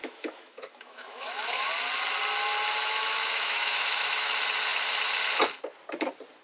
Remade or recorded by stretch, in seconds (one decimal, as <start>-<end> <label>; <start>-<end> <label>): 0.0-1.7 remade; 1.7-2.8 recorded; 2.8-4.3 remade; 4.3-6.4 recorded